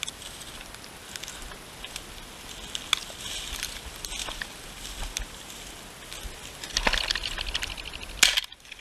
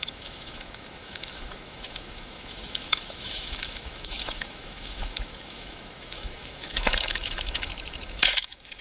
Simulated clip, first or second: second